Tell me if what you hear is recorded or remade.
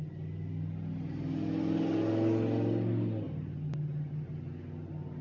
recorded